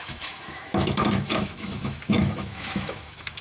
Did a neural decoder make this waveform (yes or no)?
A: yes